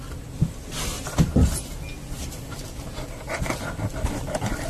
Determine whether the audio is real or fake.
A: real